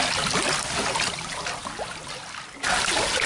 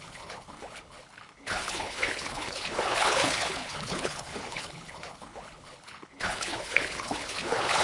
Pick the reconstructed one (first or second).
second